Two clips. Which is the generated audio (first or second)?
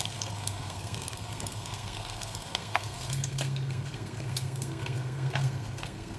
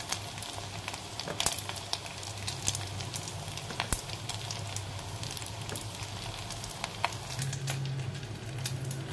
first